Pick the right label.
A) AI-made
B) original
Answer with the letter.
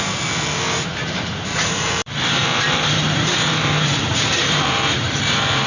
A